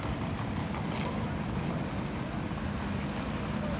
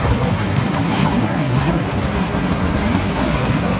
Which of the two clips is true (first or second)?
first